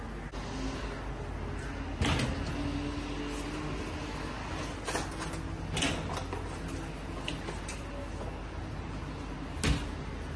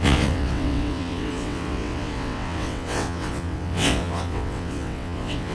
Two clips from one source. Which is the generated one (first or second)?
second